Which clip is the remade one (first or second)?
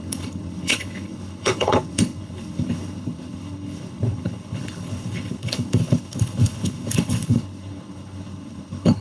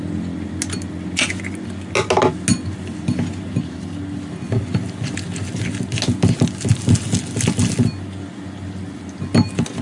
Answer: first